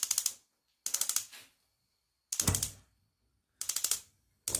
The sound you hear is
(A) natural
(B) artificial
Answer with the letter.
A